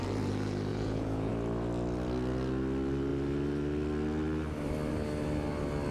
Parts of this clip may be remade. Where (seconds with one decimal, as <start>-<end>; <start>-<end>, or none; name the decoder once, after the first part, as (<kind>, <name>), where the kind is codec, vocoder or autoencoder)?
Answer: 0.7-1.3 (vocoder, Vocos)